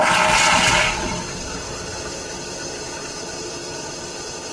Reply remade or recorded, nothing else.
recorded